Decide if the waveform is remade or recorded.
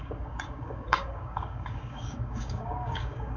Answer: remade